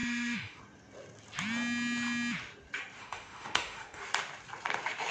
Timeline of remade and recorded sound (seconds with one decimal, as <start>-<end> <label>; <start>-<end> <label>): 0.0-0.6 remade; 0.6-3.0 recorded; 3.0-4.0 remade; 4.0-5.1 recorded